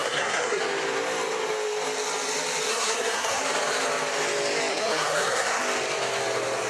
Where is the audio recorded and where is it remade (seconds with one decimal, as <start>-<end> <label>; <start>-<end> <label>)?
0.0-0.6 remade; 0.6-2.7 recorded; 2.7-3.4 remade; 3.4-4.7 recorded; 4.7-5.6 remade; 5.6-6.7 recorded